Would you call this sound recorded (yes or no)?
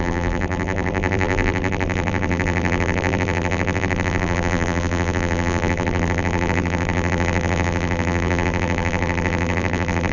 no